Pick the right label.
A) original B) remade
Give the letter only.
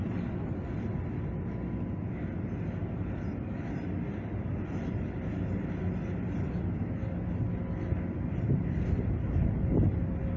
A